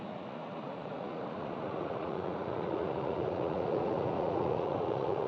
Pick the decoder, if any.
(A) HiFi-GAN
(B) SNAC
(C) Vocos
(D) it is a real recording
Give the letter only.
C